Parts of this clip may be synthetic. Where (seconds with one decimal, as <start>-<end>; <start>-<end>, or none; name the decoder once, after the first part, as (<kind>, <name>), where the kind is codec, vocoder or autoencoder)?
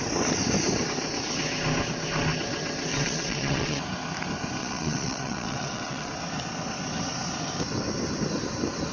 2.9-3.8 (vocoder, WaveNeXt); 4.6-6.1